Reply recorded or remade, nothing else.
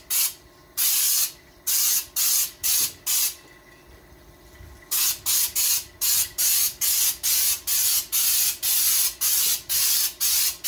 recorded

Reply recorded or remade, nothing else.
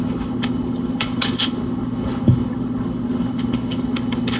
remade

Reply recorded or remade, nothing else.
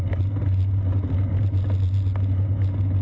recorded